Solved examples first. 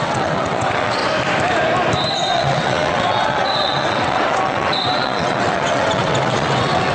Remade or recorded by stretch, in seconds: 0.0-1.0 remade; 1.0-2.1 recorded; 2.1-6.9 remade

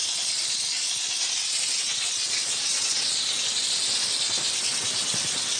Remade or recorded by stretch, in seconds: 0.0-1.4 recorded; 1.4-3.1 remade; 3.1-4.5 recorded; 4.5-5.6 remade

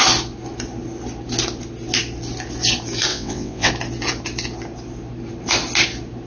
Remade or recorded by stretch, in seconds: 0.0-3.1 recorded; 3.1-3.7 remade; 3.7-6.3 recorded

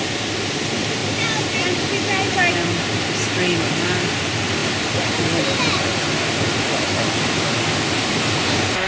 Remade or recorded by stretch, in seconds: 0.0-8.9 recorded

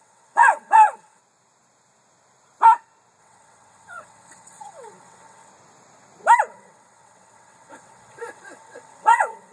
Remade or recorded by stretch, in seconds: 0.0-1.2 remade; 1.2-3.2 recorded; 3.2-5.5 remade; 5.5-6.5 recorded; 6.5-9.5 remade

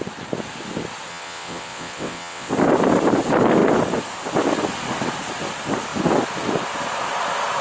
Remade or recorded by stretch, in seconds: 0.0-1.1 recorded; 1.1-2.5 remade; 2.5-7.6 recorded